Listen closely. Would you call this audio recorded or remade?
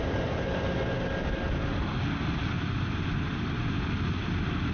recorded